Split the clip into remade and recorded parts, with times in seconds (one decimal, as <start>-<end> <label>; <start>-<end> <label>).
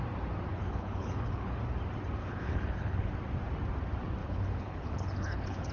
0.0-0.5 recorded; 0.5-1.6 remade; 1.6-2.2 recorded; 2.2-3.1 remade; 3.1-4.2 recorded; 4.2-5.7 remade